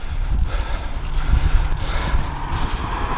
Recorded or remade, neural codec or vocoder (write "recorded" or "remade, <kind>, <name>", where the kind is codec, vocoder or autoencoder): remade, vocoder, BigVGAN v2